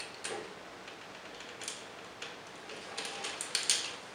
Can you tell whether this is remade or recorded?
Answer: recorded